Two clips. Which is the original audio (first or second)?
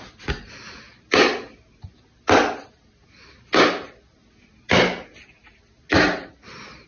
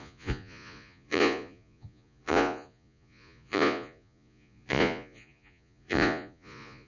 first